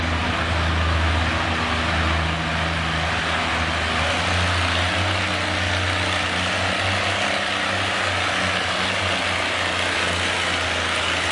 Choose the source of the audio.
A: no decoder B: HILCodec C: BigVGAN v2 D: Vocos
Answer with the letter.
A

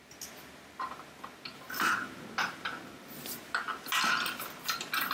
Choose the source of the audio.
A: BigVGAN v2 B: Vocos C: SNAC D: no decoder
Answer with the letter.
D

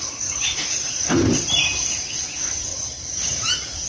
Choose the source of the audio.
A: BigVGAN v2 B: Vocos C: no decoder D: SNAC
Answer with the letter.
A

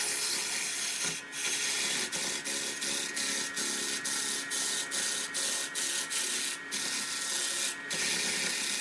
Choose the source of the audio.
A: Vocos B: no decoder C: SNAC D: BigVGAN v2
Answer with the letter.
B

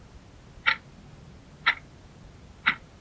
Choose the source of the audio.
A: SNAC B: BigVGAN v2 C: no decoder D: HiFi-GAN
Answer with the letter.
C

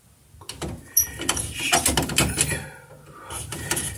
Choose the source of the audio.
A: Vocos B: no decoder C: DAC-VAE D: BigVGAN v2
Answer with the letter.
B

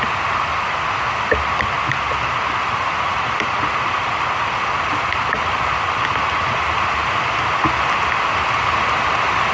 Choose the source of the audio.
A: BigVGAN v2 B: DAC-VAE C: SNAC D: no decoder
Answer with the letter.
D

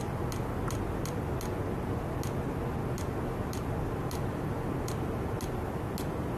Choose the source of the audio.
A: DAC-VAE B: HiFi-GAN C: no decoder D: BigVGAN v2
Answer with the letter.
C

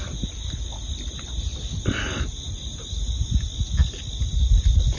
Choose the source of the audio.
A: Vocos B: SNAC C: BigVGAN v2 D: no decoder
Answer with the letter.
D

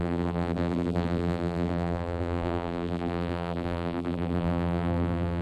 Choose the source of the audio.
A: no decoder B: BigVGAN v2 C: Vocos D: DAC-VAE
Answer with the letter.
B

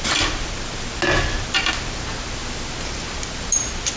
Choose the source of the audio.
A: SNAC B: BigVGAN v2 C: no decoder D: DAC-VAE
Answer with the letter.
C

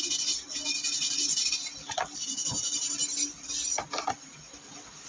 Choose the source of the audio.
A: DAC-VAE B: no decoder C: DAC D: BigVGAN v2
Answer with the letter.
B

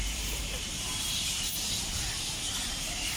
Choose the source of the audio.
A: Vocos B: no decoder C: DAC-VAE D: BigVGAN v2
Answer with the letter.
D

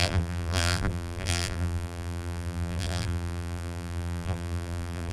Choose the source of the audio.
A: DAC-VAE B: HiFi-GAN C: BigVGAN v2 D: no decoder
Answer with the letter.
C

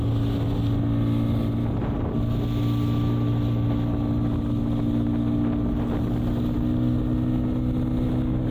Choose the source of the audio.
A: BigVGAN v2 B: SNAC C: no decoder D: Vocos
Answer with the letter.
C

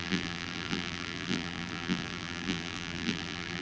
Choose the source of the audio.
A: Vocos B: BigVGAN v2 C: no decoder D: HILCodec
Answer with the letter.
B